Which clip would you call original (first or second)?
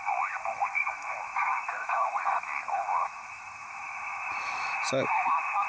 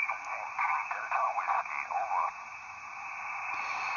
second